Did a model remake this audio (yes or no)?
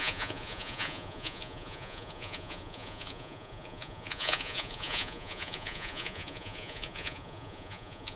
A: yes